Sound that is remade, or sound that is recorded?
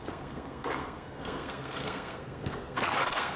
remade